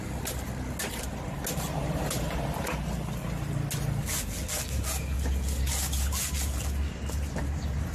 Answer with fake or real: real